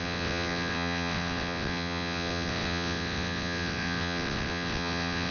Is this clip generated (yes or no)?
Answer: yes